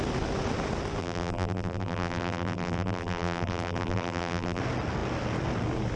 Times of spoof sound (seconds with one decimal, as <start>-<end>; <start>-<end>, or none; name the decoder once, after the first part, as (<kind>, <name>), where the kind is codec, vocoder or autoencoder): 1.0-4.6 (vocoder, BigVGAN v2)